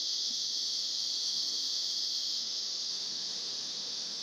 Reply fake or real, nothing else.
fake